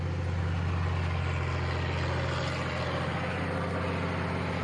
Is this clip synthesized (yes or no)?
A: no